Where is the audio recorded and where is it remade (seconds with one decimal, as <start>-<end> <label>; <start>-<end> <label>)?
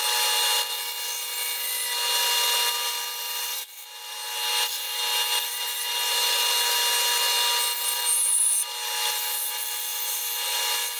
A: 0.0-11.0 recorded